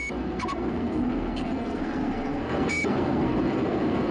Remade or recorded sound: remade